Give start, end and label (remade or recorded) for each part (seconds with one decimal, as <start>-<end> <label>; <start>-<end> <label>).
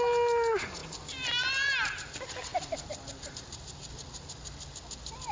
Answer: 0.0-5.3 recorded